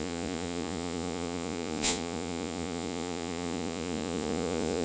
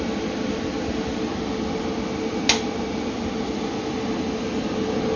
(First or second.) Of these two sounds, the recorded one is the second